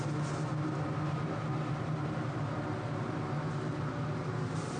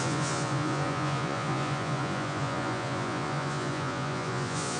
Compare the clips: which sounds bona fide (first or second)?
first